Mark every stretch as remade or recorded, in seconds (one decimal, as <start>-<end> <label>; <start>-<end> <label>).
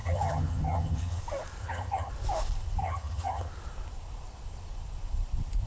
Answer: 0.0-1.2 remade; 1.2-1.6 recorded; 1.6-2.1 remade; 2.1-2.8 recorded; 2.8-3.5 remade; 3.5-5.7 recorded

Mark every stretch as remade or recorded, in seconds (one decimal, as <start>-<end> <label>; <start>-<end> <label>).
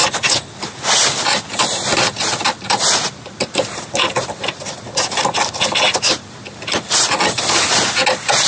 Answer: 0.0-8.5 recorded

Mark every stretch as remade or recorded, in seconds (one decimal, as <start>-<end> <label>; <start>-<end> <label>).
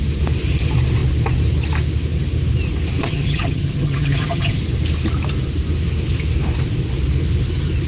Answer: 0.0-3.0 recorded; 3.0-4.6 remade; 4.6-7.9 recorded